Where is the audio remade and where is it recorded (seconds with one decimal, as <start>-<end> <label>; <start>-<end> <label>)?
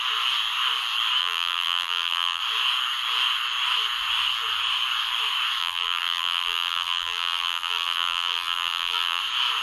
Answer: 0.0-1.2 recorded; 1.2-2.4 remade; 2.4-5.6 recorded; 5.6-9.2 remade; 9.2-9.6 recorded